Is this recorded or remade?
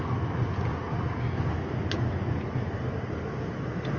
recorded